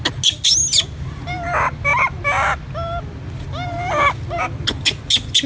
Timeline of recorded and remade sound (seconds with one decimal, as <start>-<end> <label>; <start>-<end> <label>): 0.0-5.5 recorded